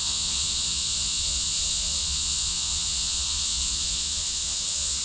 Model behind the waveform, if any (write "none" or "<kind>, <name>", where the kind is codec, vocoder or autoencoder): vocoder, Vocos